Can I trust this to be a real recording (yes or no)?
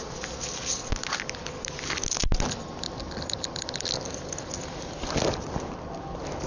yes